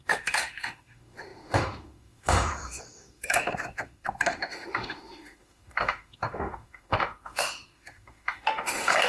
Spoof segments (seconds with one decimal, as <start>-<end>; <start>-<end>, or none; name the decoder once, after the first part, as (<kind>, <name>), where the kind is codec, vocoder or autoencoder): 0.0-9.1 (autoencoder, DAC-VAE)